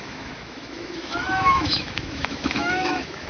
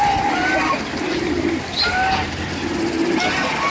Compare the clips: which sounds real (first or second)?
second